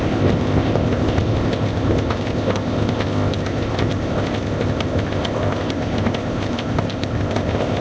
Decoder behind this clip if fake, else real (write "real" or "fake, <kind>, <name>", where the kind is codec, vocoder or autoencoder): fake, codec, ZipCodec